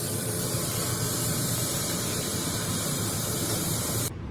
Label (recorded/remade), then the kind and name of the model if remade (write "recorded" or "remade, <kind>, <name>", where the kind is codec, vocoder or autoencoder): remade, vocoder, BigVGAN v2